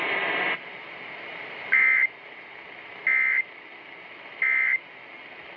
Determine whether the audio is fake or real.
real